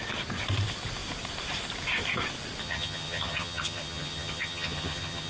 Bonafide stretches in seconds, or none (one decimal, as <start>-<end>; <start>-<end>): 0.0-2.6